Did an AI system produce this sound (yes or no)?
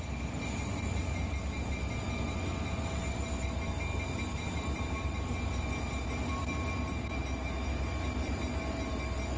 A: no